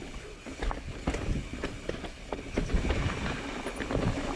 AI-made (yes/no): no